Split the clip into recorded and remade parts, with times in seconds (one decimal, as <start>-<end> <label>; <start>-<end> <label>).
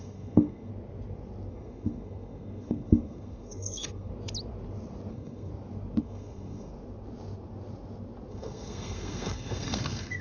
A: 0.0-0.7 remade; 0.7-1.5 recorded; 1.5-4.1 remade; 4.1-5.1 recorded; 5.1-5.5 remade; 5.5-6.0 recorded; 6.0-6.7 remade; 6.7-8.3 recorded; 8.3-10.2 remade